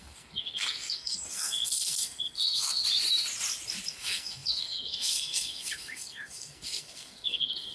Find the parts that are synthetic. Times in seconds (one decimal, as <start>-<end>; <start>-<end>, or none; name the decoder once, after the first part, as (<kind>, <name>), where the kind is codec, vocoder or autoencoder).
0.0-2.8 (codec, SNAC); 3.9-7.7